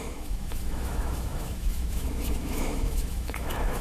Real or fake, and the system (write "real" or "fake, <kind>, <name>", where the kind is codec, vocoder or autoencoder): fake, autoencoder, DAC-VAE